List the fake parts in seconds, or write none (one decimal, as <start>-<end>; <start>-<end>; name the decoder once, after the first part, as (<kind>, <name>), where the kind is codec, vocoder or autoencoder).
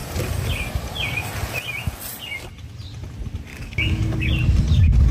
3.5-4.3 (codec, DAC)